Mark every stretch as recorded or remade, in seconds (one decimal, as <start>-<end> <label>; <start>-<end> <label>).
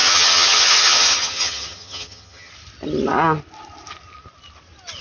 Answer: 0.0-2.5 remade; 2.5-5.0 recorded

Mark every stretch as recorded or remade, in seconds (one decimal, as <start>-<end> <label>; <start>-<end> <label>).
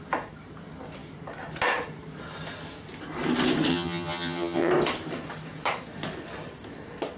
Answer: 0.0-3.7 recorded; 3.7-4.7 remade; 4.7-7.2 recorded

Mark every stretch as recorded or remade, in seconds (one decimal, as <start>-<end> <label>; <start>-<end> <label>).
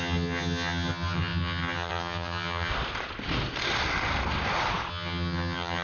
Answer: 0.0-2.7 remade; 2.7-4.9 recorded; 4.9-5.8 remade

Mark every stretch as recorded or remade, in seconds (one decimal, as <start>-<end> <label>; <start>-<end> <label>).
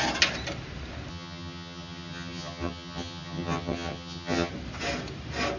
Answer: 0.0-1.1 recorded; 1.1-4.5 remade; 4.5-5.6 recorded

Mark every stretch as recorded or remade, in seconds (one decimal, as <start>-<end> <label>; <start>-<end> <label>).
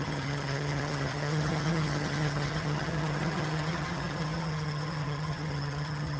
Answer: 0.0-6.2 remade